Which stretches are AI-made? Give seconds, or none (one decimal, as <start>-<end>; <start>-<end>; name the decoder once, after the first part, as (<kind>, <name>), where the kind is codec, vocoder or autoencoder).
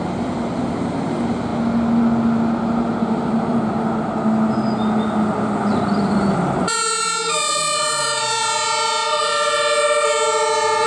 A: none